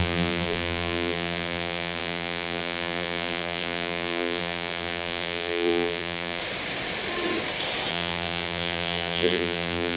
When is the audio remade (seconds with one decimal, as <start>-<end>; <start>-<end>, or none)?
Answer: 0.0-6.4; 7.9-10.0